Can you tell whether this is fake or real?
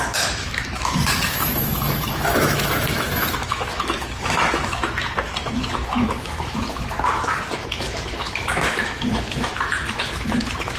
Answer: fake